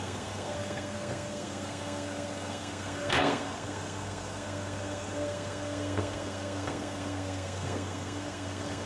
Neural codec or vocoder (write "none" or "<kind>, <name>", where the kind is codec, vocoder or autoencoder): codec, SNAC